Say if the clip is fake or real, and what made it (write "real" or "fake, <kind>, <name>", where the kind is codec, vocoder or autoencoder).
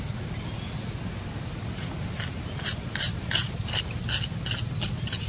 real